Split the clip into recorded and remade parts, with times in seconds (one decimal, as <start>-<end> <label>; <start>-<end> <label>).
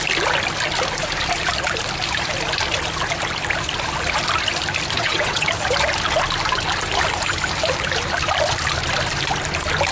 0.0-5.0 recorded; 5.0-5.5 remade; 5.5-9.9 recorded